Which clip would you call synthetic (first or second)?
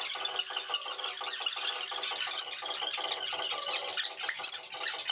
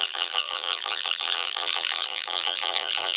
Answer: second